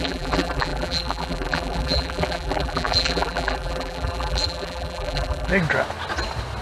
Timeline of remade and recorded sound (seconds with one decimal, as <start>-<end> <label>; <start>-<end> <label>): 0.0-5.5 remade; 5.5-6.6 recorded